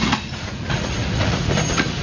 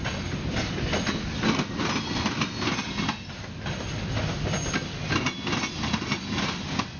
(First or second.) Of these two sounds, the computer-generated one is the first